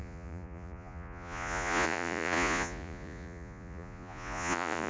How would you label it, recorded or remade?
remade